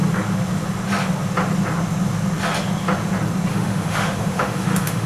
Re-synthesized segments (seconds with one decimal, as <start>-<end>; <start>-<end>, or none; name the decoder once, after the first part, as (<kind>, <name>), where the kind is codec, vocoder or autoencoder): 3.5-5.1 (autoencoder, DAC-VAE)